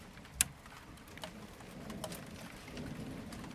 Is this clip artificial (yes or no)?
no